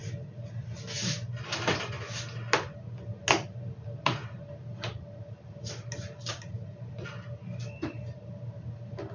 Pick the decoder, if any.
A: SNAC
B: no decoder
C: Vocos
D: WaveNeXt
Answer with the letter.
B